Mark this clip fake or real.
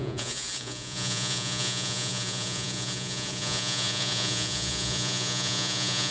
fake